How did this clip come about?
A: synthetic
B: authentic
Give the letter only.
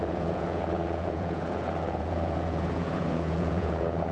A